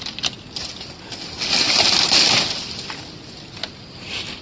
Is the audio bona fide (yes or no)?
yes